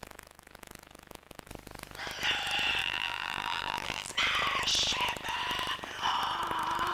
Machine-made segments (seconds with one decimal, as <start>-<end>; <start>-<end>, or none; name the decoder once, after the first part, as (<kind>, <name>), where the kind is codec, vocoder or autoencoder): 2.8-4.1 (vocoder, BigVGAN v2)